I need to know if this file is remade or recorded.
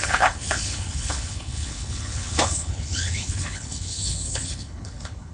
remade